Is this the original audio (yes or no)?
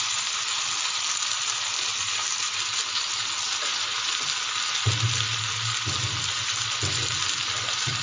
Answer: yes